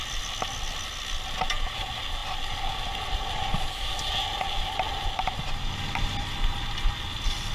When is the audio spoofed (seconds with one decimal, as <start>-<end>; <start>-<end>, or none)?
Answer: none